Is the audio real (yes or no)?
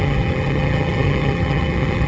no